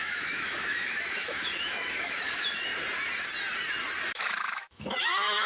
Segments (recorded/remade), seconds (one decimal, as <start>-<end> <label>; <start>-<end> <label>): 0.0-2.7 remade; 2.7-4.1 recorded; 4.1-5.5 remade